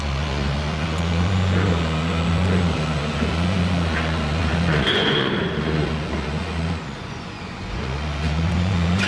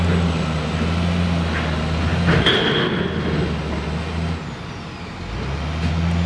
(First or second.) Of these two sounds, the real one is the second